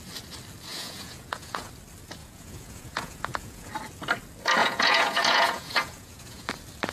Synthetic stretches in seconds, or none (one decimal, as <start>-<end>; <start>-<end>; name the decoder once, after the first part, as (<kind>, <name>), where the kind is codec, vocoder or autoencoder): 0.7-1.7 (vocoder, Vocos); 2.2-3.7; 4.6-6.5